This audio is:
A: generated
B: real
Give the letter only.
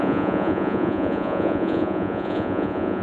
A